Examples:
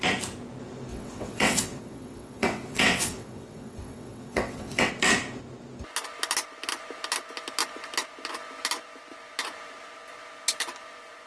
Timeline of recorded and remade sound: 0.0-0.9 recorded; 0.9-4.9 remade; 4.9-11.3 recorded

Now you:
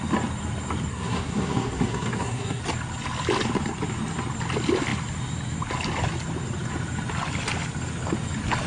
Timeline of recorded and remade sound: 0.0-0.9 recorded; 0.9-2.6 remade; 2.6-8.7 recorded

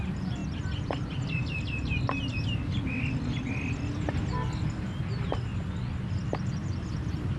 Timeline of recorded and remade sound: 0.0-0.4 remade; 0.4-4.8 recorded; 4.8-5.5 remade; 5.5-6.5 recorded; 6.5-7.4 remade